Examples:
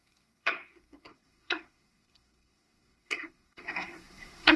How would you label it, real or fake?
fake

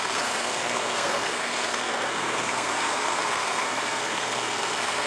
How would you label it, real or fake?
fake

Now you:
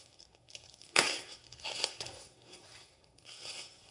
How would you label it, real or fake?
fake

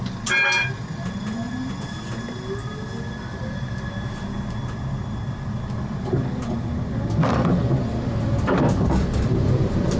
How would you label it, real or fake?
real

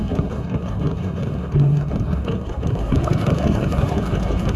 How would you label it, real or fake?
fake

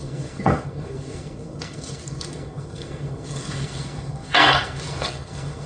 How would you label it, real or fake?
fake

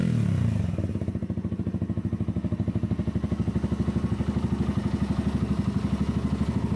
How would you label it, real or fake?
real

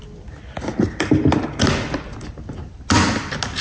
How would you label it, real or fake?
real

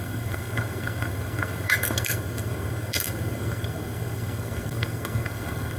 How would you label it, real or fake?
fake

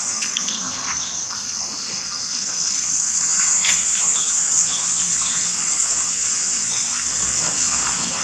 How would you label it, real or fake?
fake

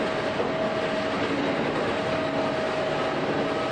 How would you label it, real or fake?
real